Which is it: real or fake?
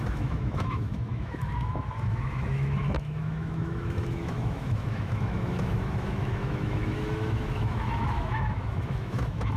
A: fake